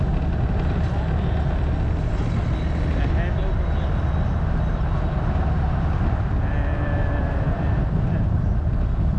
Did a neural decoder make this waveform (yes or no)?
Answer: no